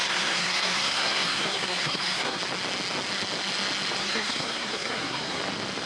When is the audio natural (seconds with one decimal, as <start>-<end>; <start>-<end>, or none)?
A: 2.4-4.0; 5.4-5.9